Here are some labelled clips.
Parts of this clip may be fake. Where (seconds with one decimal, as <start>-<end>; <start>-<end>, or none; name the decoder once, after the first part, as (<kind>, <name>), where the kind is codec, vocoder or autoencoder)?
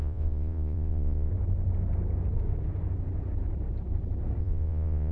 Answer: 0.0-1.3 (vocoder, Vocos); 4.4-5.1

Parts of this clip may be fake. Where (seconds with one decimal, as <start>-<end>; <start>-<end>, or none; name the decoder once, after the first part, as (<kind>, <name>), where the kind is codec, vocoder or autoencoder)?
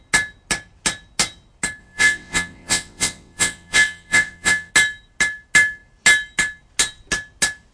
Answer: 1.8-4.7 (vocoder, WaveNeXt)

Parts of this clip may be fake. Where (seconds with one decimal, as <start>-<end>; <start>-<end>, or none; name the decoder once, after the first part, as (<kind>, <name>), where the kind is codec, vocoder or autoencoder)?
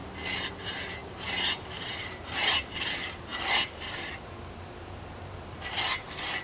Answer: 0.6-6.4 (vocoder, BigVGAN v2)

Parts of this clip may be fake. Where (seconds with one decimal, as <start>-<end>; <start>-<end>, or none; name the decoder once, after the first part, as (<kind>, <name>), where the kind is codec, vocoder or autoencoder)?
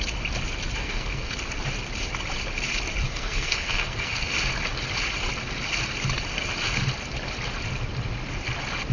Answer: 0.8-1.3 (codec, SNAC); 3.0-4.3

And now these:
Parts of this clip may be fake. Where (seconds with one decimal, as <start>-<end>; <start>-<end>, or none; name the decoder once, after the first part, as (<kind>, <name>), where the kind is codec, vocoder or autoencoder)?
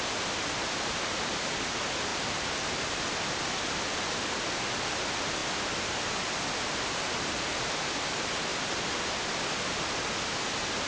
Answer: none